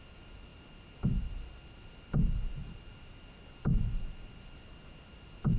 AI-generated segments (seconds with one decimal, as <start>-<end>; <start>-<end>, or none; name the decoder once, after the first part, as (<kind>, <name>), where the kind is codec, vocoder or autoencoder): none